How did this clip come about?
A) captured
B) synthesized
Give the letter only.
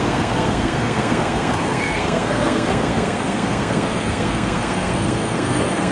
B